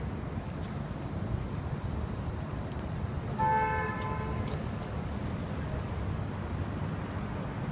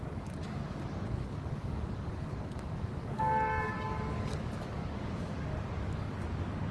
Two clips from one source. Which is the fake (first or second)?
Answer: second